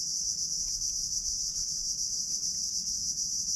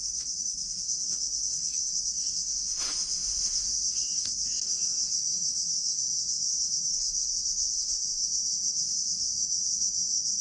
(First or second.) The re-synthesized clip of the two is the second